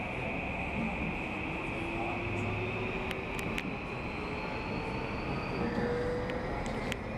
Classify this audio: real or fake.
real